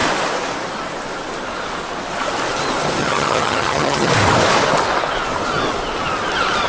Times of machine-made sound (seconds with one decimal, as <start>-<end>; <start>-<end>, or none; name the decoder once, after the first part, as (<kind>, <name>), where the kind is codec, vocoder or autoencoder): 3.0-4.1 (vocoder, HiFi-GAN)

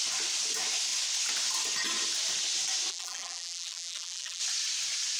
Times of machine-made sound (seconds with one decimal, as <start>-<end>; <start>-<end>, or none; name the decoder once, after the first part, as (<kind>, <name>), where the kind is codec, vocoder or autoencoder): 2.9-4.4 (vocoder, BigVGAN v2)

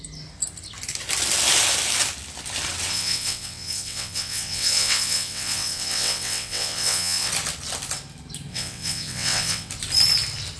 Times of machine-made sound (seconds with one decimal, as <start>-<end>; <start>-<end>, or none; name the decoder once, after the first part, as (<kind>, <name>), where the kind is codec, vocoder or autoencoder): 2.9-7.3 (vocoder, WaveNeXt); 8.5-9.7